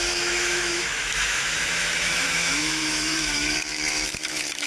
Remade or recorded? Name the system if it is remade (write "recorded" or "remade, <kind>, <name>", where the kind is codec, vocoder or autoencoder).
remade, autoencoder, DAC-VAE